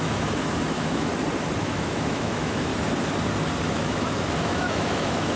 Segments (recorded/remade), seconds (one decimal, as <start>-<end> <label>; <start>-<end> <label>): 0.0-1.1 remade; 1.1-1.6 recorded; 1.6-2.7 remade; 2.7-3.7 recorded; 3.7-5.4 remade